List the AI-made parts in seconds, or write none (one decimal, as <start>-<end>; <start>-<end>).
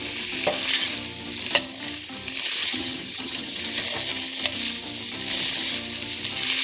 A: 2.6-3.6